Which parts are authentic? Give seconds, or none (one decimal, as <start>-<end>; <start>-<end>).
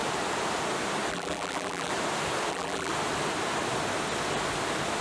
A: 0.0-1.1; 1.9-2.5; 2.9-5.0